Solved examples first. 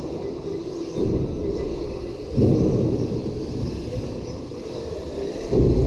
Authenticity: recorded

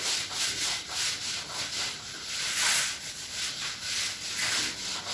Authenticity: recorded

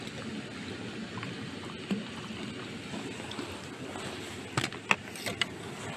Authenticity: recorded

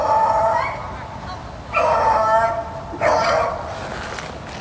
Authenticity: recorded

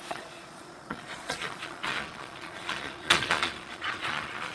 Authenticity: remade